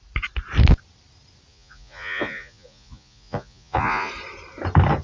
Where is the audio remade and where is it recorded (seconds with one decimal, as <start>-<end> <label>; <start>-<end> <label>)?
0.0-1.5 recorded; 1.5-4.1 remade; 4.1-5.0 recorded